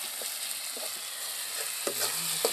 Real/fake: real